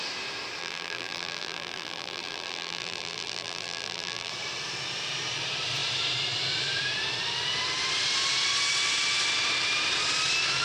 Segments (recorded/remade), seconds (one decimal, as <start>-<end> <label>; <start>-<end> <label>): 0.0-0.6 recorded; 0.6-4.3 remade; 4.3-10.6 recorded